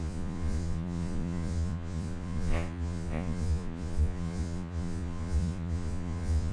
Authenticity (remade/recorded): remade